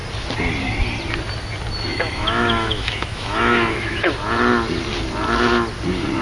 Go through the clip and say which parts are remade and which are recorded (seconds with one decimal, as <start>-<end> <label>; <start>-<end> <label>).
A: 0.0-1.9 recorded; 1.9-4.1 remade; 4.1-6.2 recorded